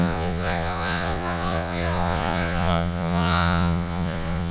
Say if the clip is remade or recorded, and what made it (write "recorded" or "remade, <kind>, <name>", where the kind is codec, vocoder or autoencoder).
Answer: remade, vocoder, Vocos